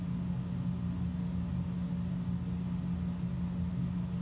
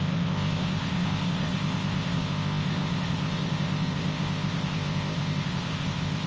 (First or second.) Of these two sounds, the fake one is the second